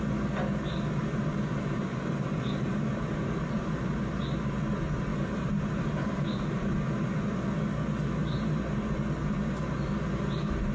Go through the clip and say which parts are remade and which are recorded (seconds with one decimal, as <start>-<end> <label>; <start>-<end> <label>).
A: 0.0-1.0 recorded; 1.0-4.1 remade; 4.1-5.1 recorded; 5.1-6.7 remade; 6.7-8.2 recorded; 8.2-8.8 remade; 8.8-10.7 recorded